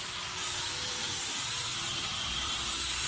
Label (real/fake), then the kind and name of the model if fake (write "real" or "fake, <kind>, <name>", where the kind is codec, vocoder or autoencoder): fake, vocoder, BigVGAN v2